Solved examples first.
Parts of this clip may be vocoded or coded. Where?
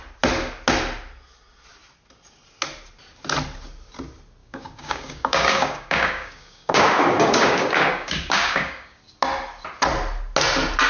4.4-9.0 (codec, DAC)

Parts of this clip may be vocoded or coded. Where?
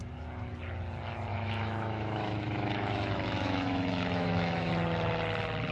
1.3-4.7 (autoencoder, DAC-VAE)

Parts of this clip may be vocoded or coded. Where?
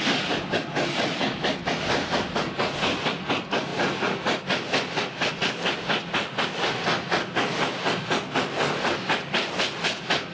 none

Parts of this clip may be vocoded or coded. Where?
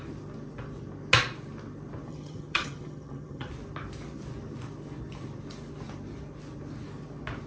2.1-3.5 (vocoder, HiFi-GAN)